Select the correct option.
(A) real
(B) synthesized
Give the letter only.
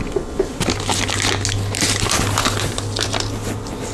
A